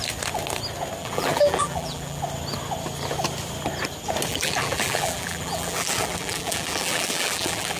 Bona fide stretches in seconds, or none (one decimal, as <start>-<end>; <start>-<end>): 0.0-1.0; 2.2-4.3